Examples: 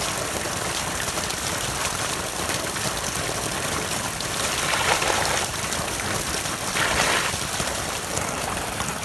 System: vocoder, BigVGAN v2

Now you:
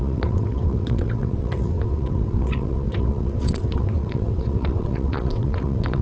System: vocoder, WaveNeXt